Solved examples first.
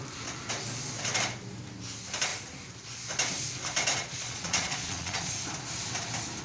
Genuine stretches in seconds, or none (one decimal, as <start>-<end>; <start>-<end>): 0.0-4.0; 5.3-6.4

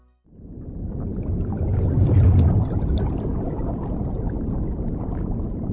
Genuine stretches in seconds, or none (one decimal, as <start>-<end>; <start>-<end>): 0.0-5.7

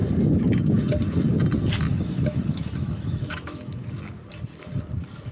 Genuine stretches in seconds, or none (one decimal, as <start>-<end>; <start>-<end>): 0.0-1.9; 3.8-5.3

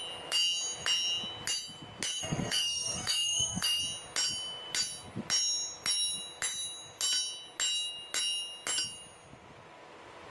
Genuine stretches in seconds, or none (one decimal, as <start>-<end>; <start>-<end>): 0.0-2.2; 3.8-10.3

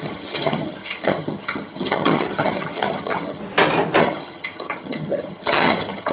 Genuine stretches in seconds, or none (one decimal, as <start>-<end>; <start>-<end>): 3.4-4.0